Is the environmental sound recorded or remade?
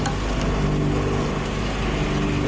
recorded